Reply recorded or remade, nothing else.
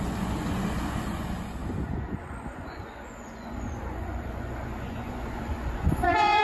remade